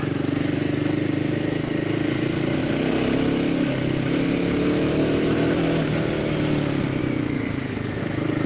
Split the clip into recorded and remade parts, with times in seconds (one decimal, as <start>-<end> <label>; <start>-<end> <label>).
0.0-8.5 recorded

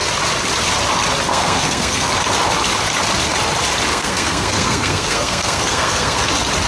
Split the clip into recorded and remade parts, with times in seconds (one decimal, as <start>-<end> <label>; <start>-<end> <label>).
0.0-1.3 recorded; 1.3-2.1 remade; 2.1-3.9 recorded; 3.9-6.2 remade; 6.2-6.7 recorded

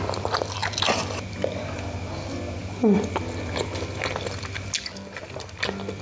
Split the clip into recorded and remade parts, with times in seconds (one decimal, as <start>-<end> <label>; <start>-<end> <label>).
0.0-6.0 recorded

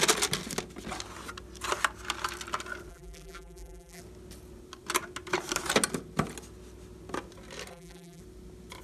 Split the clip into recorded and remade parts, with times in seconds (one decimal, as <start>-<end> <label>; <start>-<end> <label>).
0.0-2.9 recorded; 2.9-4.0 remade; 4.0-7.7 recorded; 7.7-8.2 remade; 8.2-8.8 recorded

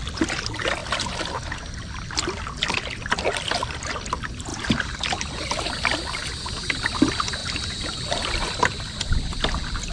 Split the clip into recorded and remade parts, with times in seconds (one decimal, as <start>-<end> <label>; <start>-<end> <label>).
0.0-4.5 recorded; 4.5-5.7 remade; 5.7-7.4 recorded; 7.4-8.0 remade; 8.0-9.9 recorded